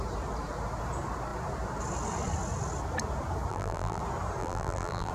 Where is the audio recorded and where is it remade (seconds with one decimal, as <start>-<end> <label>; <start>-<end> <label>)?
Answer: 0.0-3.5 recorded; 3.5-4.0 remade; 4.0-4.4 recorded; 4.4-5.1 remade